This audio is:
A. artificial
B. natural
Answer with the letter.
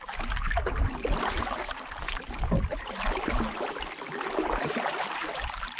B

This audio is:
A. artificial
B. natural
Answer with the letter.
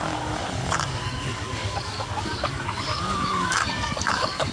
A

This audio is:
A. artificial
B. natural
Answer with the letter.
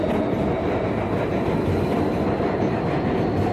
B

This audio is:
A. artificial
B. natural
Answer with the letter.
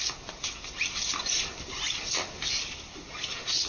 B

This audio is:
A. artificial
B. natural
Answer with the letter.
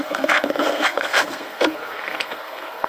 A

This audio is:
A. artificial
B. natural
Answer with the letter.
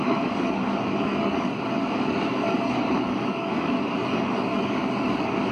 A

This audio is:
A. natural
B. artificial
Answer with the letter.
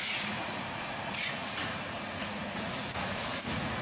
B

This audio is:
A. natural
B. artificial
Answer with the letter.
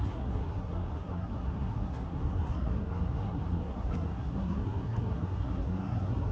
B